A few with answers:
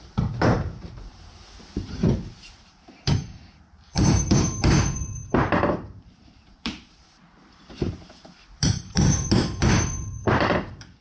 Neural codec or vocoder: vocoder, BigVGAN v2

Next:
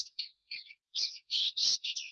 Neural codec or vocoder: codec, SNAC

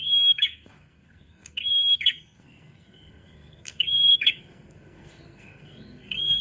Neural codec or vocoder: codec, SNAC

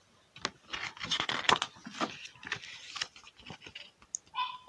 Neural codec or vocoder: none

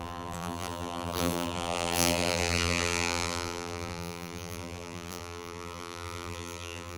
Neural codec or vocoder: vocoder, BigVGAN v2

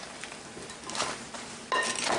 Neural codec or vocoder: none